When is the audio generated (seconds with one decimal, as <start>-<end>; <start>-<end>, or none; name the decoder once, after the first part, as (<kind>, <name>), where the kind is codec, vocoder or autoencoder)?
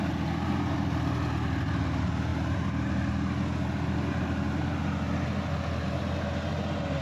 none